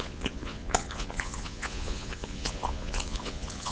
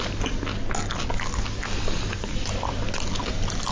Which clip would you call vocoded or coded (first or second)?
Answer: first